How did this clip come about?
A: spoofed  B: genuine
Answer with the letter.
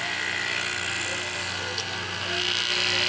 B